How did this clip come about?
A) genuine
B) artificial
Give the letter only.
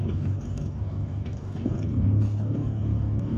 B